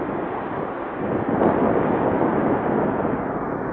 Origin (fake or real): real